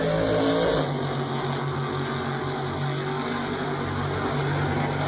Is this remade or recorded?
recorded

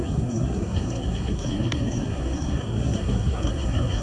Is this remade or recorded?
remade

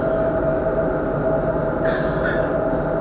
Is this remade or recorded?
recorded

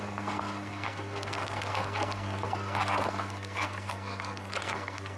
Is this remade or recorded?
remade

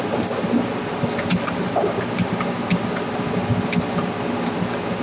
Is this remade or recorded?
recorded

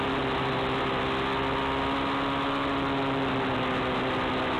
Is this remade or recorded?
recorded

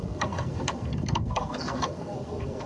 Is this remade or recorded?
remade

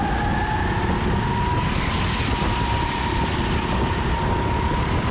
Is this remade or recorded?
recorded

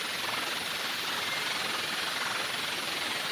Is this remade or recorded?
recorded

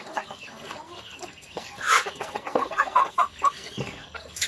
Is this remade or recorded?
remade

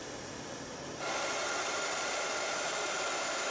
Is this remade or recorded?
recorded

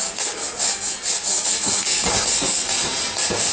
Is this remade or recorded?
remade